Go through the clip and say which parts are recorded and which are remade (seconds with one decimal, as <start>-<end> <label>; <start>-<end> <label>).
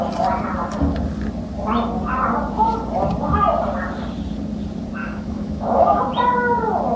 0.0-5.0 recorded; 5.0-6.0 remade; 6.0-7.0 recorded